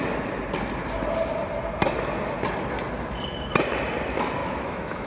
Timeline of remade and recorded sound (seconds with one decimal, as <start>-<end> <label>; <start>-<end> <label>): 0.0-4.4 recorded; 4.4-5.1 remade